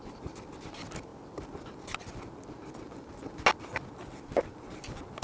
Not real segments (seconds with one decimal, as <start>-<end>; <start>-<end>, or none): none